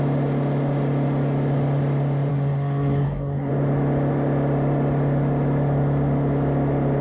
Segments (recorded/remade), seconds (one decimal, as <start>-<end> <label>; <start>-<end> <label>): 0.0-2.3 recorded; 2.3-3.5 remade; 3.5-7.0 recorded